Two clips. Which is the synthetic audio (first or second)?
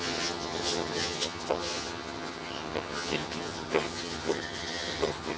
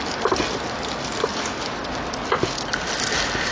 first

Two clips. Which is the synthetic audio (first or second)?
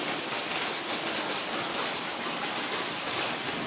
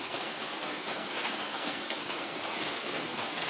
second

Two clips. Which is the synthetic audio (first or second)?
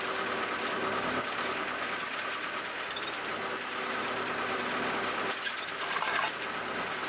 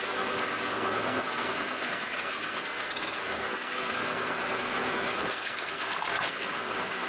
second